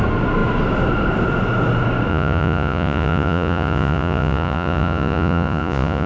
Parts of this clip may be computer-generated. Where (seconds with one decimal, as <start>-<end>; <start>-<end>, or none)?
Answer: 2.1-6.1